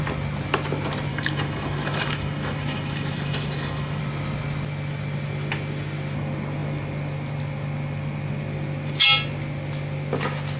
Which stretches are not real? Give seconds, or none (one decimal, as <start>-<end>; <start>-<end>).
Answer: 1.1-4.0